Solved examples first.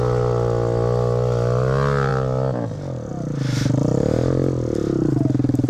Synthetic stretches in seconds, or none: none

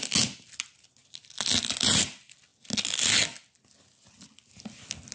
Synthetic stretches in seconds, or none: none

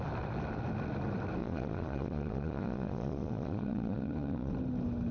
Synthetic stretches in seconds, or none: 1.4-4.5 (vocoder, Vocos)

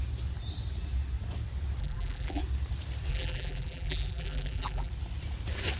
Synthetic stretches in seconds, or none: 1.8-2.4 (vocoder, BigVGAN v2); 3.1-4.9